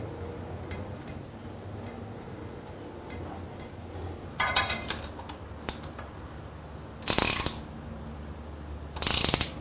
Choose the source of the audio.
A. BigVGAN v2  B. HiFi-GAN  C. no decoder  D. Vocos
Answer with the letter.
C